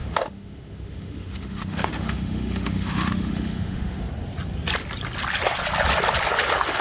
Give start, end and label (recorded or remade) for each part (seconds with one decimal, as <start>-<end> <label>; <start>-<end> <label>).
0.0-4.1 remade; 4.1-6.8 recorded